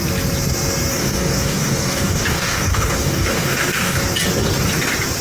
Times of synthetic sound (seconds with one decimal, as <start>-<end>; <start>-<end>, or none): 0.9-4.0